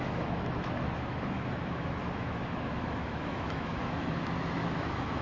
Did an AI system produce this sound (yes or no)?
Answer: yes